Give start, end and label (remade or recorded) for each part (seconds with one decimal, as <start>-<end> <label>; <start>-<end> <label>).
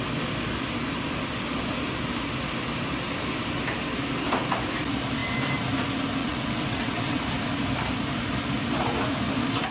0.0-6.2 recorded; 6.2-7.2 remade; 7.2-9.7 recorded